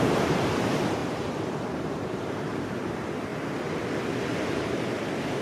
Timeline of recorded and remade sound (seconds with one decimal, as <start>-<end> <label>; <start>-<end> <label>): 0.0-1.0 remade; 1.0-1.8 recorded; 1.8-3.3 remade; 3.3-4.5 recorded; 4.5-5.4 remade